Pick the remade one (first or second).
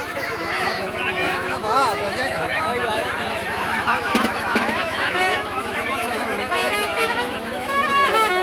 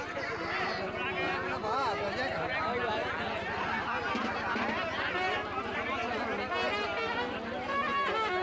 first